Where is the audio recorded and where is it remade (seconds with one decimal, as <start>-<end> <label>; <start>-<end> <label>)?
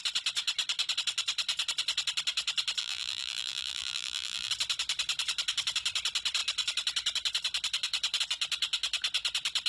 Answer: 0.0-2.8 recorded; 2.8-4.5 remade; 4.5-9.7 recorded